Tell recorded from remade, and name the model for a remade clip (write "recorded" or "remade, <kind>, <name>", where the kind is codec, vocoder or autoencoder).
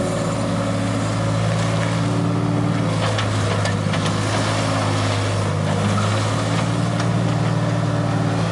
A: recorded